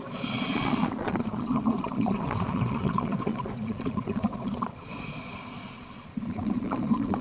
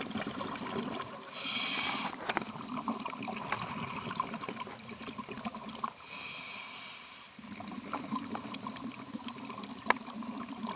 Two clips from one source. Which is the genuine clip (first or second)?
second